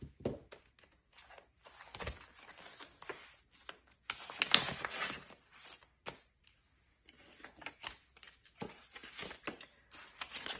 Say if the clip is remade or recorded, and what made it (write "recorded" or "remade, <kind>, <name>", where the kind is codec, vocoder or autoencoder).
recorded